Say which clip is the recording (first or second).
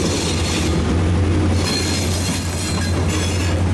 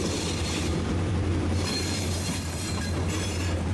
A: first